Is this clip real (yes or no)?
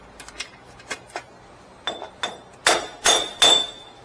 yes